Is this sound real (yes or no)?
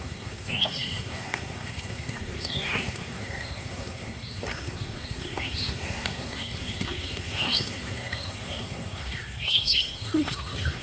no